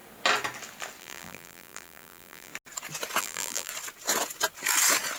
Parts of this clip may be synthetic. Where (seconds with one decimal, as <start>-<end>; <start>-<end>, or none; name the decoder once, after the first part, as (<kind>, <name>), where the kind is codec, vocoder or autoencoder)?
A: 1.0-2.5 (vocoder, BigVGAN v2); 3.2-3.7